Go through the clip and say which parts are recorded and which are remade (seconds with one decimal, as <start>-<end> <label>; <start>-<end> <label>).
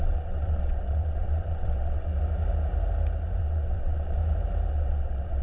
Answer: 0.0-2.1 remade; 2.1-3.4 recorded; 3.4-4.2 remade; 4.2-4.7 recorded; 4.7-5.4 remade